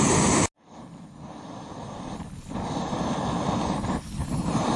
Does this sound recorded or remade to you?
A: recorded